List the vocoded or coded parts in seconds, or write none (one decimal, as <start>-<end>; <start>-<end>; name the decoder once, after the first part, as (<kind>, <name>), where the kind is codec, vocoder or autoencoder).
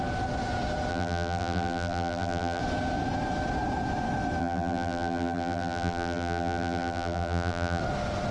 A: 0.9-2.6 (vocoder, BigVGAN v2); 4.4-7.8